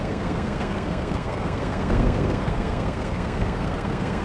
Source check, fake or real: fake